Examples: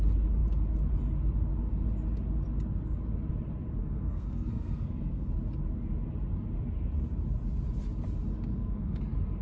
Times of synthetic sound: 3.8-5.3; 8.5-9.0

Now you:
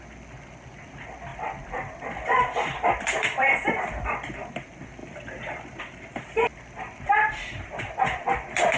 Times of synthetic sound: 1.3-4.5; 5.0-5.8; 6.5-7.3

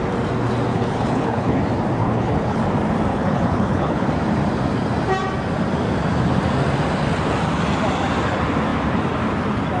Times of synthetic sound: 0.7-1.6; 2.0-2.6; 3.1-4.1